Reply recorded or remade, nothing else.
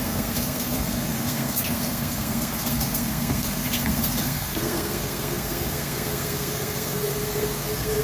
remade